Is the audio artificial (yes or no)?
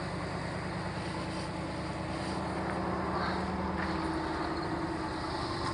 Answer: no